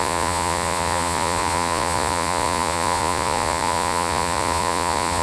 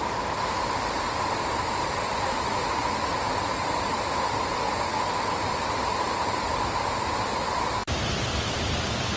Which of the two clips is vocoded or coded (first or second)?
first